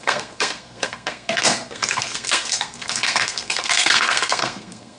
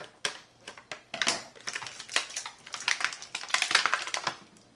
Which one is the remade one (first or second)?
first